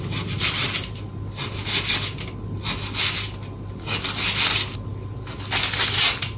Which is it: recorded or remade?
recorded